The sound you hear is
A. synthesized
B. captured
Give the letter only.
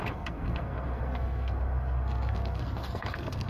A